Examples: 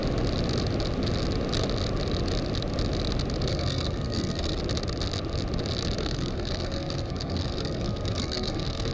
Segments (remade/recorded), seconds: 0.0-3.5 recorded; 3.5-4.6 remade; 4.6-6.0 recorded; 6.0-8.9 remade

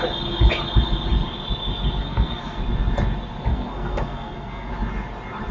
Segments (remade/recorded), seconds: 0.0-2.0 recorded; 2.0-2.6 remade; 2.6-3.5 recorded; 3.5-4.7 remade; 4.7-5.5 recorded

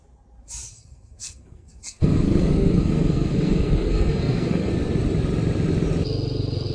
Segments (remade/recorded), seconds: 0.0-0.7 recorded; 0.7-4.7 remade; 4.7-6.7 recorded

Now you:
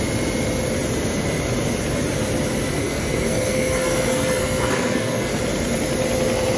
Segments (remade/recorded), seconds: 0.0-2.8 recorded; 2.8-5.4 remade; 5.4-6.6 recorded